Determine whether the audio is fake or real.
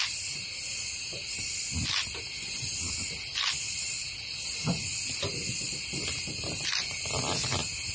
real